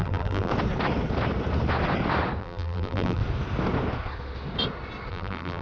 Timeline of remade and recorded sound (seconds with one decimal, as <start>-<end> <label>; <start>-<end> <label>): 0.0-0.5 remade; 0.5-2.4 recorded; 2.4-3.2 remade; 3.2-5.1 recorded; 5.1-5.6 remade